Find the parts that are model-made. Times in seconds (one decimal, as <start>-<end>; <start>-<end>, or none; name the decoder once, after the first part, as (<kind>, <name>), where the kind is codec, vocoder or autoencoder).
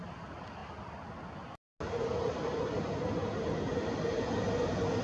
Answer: 0.6-1.1 (vocoder, BigVGAN v2)